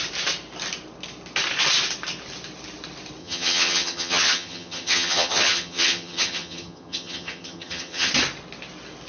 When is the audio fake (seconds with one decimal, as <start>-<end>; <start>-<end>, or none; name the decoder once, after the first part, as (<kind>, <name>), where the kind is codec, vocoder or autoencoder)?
3.2-8.1 (vocoder, HiFi-GAN)